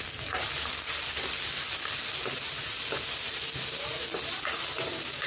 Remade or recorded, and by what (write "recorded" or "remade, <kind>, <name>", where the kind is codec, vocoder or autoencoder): recorded